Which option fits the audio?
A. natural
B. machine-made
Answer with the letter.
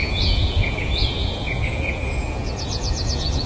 B